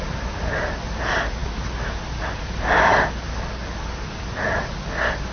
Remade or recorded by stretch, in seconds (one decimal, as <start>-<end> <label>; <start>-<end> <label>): 0.0-5.3 recorded